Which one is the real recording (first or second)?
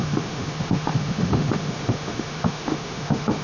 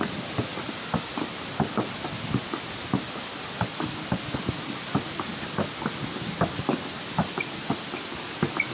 second